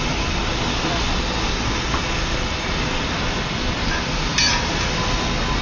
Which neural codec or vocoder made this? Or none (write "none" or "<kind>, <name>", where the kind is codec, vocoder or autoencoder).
none